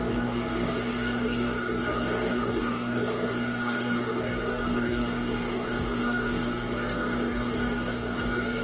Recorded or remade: remade